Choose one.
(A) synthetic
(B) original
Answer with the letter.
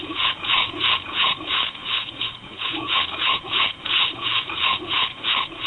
A